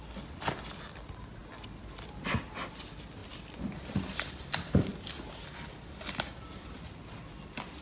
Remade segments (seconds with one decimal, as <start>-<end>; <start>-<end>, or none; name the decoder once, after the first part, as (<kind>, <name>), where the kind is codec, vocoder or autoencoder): none